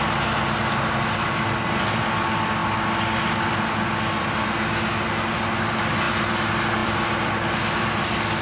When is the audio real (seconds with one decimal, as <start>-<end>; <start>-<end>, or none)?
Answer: 0.0-8.4